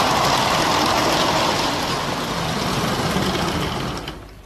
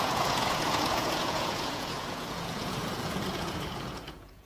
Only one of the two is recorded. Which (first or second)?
first